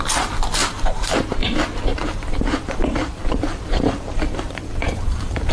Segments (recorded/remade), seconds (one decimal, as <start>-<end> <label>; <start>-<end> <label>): 0.0-0.6 recorded; 0.6-1.1 remade; 1.1-1.9 recorded; 1.9-5.5 remade